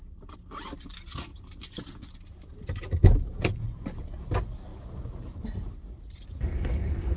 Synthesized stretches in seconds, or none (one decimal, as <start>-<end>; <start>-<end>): none